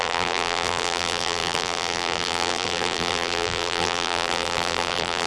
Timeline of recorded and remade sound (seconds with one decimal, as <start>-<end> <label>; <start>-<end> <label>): 0.0-5.3 remade